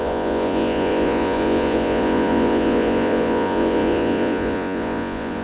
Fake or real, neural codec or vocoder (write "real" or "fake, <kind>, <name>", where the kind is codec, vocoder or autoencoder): fake, vocoder, Vocos